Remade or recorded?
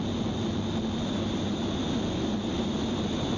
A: recorded